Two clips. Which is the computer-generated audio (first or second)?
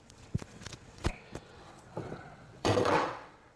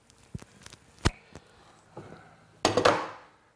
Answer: first